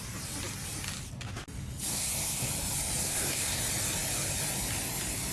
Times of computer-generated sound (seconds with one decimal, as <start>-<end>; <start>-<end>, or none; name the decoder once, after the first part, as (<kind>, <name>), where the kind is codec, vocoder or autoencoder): 1.9-2.5 (codec, SNAC); 3.0-3.6